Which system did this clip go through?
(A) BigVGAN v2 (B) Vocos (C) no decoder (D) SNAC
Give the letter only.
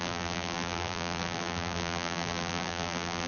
A